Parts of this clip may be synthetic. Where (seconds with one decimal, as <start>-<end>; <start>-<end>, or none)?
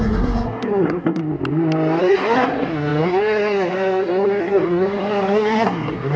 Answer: 0.0-1.2; 2.0-6.2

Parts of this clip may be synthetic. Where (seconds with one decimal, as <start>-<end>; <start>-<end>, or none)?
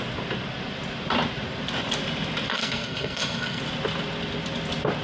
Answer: 2.5-3.6